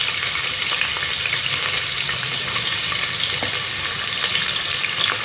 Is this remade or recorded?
remade